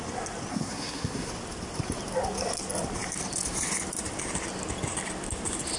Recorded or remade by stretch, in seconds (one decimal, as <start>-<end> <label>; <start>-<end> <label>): 0.0-0.5 recorded; 0.5-1.3 remade; 1.3-5.8 recorded